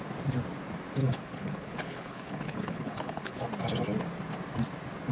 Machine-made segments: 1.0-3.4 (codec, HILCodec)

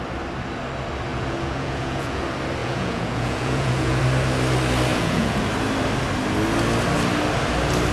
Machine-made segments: 1.1-2.2 (vocoder, Vocos); 2.6-4.0; 4.9-5.4

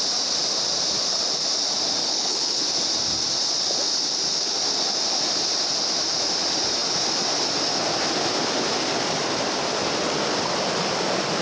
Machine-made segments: 2.0-2.6 (codec, HILCodec)